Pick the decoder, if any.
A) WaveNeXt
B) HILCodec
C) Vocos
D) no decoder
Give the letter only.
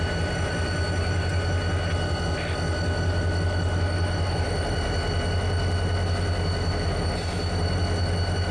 D